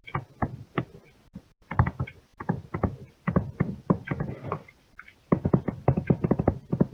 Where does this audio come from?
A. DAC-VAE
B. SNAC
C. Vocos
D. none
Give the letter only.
D